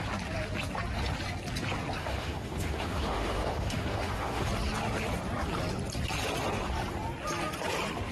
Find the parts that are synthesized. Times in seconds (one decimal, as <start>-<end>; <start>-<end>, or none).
2.0-4.5